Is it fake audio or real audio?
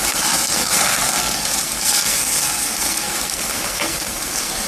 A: fake